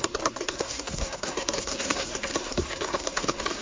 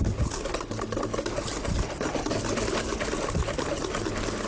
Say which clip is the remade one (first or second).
first